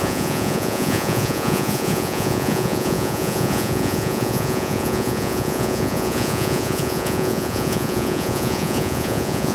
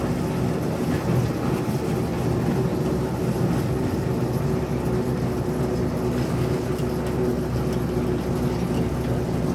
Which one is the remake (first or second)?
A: first